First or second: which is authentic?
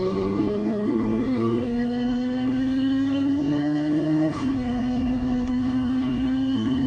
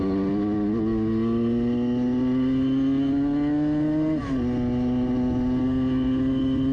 second